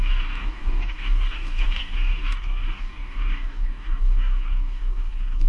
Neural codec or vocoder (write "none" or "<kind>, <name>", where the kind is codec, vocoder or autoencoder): codec, DAC